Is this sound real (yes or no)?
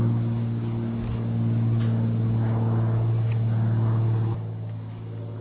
yes